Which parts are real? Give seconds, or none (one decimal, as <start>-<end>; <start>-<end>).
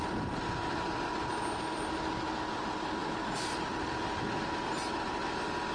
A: 0.0-5.7